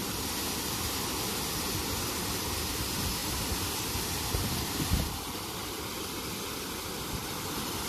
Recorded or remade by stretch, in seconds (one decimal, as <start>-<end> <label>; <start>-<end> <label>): 0.0-3.2 recorded; 3.2-5.0 remade; 5.0-7.9 recorded